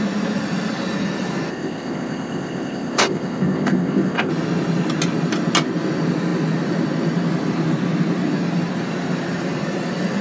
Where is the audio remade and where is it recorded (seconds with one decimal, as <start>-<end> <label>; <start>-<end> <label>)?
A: 0.0-1.5 recorded; 1.5-4.3 remade; 4.3-10.2 recorded